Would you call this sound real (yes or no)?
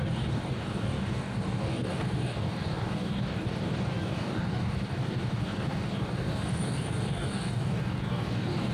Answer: no